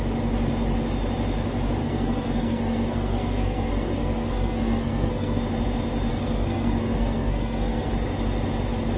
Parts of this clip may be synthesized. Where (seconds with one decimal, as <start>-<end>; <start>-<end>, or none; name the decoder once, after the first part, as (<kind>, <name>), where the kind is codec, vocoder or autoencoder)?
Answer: 1.8-5.4 (codec, SNAC); 6.1-7.9